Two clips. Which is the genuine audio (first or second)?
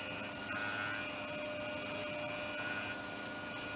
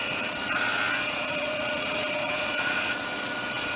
first